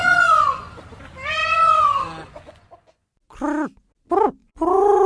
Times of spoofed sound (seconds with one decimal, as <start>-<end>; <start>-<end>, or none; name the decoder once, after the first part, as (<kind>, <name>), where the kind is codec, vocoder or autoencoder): 0.0-0.7 (vocoder, Vocos); 1.4-3.1; 4.4-5.1